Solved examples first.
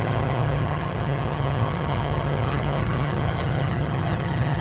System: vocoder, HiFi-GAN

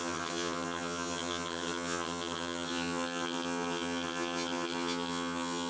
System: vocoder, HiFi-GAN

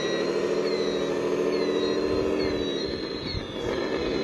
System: none